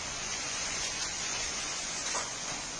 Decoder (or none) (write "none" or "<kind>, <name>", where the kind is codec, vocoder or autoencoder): vocoder, Vocos